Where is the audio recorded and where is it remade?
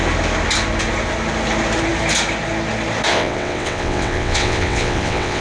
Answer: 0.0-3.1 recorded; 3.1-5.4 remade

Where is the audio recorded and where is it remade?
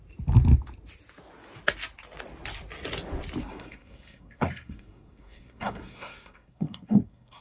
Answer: 0.0-3.4 recorded; 3.4-7.4 remade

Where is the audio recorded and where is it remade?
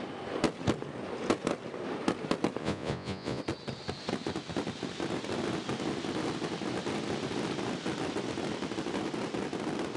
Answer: 0.0-2.6 recorded; 2.6-3.4 remade; 3.4-10.0 recorded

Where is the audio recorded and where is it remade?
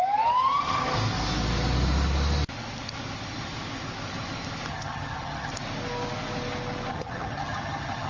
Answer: 0.0-4.7 recorded; 4.7-5.5 remade; 5.5-6.9 recorded; 6.9-8.1 remade